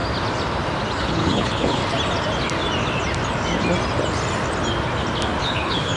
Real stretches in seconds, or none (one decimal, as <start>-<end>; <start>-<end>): 0.0-1.0; 1.8-5.4